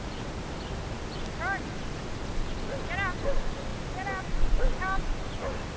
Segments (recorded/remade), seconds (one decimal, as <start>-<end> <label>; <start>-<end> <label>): 0.0-5.8 recorded